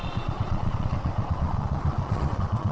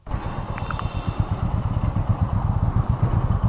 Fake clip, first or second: first